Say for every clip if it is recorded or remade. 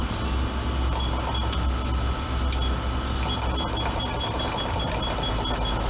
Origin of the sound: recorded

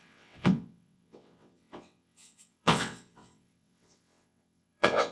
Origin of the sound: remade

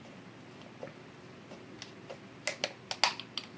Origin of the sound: recorded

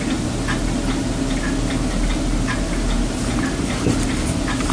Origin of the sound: recorded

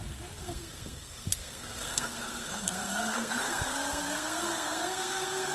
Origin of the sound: remade